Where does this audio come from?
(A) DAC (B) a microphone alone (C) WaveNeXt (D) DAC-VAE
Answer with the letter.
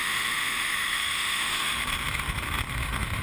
D